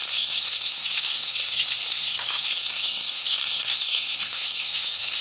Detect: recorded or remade remade